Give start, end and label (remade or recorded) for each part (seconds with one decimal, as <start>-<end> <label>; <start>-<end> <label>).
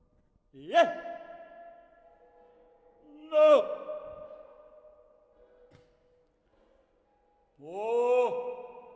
0.0-2.5 recorded; 2.5-3.6 remade; 3.6-9.0 recorded